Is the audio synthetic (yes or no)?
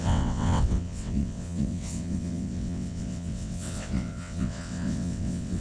yes